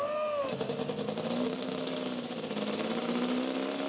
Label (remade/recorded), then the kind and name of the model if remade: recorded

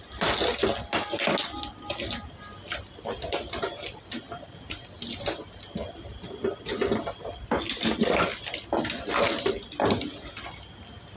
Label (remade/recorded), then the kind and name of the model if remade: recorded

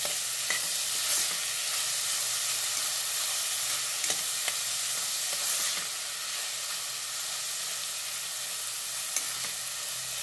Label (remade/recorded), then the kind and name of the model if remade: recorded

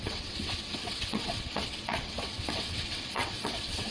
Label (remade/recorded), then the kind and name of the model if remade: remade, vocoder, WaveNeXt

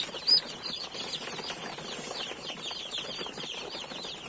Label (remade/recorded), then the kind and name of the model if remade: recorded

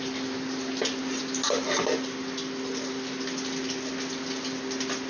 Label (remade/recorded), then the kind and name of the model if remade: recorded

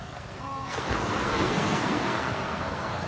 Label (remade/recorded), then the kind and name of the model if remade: remade, codec, SNAC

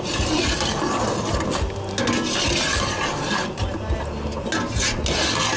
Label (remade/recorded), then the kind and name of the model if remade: recorded